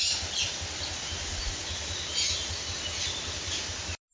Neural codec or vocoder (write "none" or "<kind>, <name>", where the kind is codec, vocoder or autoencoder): none